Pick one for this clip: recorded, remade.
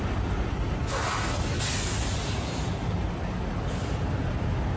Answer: recorded